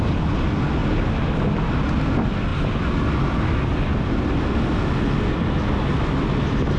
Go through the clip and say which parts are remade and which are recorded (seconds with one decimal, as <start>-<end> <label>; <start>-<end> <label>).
0.0-6.8 recorded